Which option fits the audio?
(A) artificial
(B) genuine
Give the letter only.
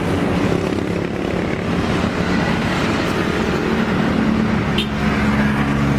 B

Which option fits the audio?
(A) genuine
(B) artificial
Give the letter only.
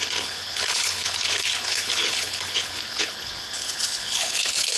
B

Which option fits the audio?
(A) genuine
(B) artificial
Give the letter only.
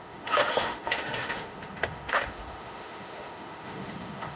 B